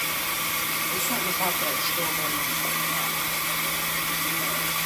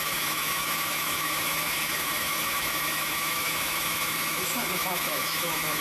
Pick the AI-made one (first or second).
second